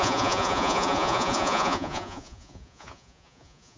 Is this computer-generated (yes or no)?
yes